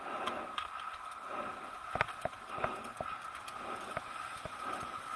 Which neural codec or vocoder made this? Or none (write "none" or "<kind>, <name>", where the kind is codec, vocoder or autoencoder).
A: none